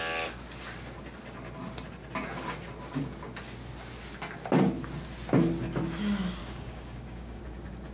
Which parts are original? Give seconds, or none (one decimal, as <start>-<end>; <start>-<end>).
0.0-6.4; 7.4-7.9

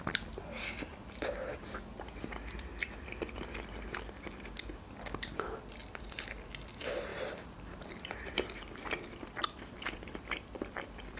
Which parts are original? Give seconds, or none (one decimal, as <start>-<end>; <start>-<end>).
0.0-5.8; 6.5-7.1

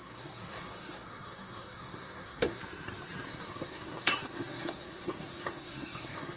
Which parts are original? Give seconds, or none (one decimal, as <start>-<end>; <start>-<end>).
2.6-3.3

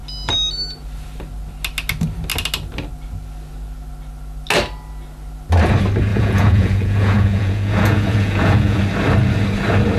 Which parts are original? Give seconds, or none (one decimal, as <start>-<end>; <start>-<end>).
0.0-6.1; 8.8-10.0